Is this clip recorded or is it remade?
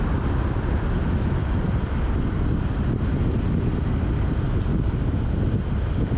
recorded